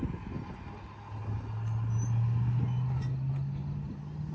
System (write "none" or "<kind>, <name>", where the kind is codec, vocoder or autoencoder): none